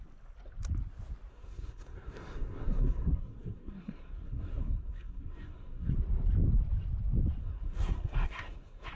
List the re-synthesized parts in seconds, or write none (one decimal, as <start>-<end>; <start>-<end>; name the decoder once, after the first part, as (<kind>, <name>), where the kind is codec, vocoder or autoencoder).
1.3-5.9 (codec, SNAC); 7.4-8.9